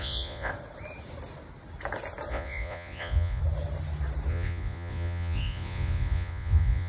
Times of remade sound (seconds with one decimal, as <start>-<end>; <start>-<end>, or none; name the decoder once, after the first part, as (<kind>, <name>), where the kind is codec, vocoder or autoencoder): 0.0-0.5 (vocoder, Vocos); 2.3-3.4; 4.3-6.9